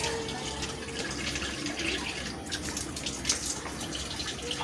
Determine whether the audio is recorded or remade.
recorded